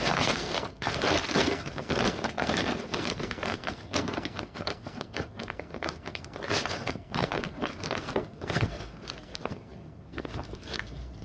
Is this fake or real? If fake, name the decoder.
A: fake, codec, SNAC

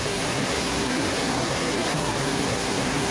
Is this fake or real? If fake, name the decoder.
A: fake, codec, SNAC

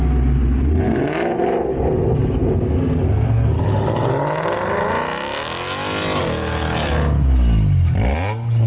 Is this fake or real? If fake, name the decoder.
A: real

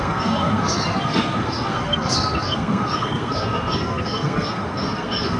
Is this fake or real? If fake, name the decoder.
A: fake, codec, SNAC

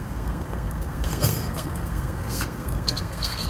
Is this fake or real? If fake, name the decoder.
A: fake, codec, SNAC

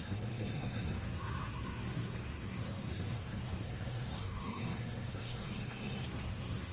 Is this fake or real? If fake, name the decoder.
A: fake, codec, SNAC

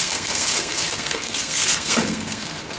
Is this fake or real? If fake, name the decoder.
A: fake, codec, SNAC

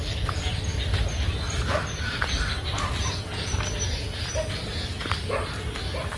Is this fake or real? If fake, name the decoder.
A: real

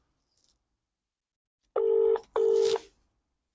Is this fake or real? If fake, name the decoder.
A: real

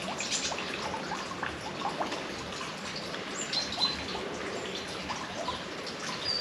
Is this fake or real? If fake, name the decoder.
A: real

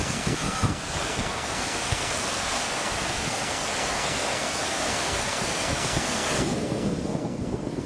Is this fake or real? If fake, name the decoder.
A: fake, codec, SNAC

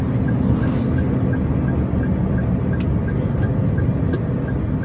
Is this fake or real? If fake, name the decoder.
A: real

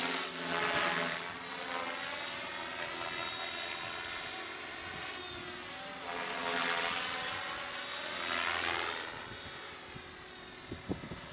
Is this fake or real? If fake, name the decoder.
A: real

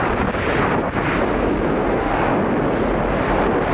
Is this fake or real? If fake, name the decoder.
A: real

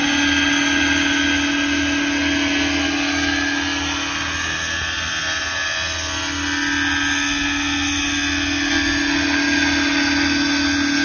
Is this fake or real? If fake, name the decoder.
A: real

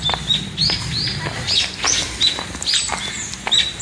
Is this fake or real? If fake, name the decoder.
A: real